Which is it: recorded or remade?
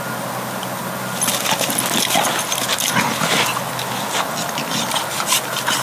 recorded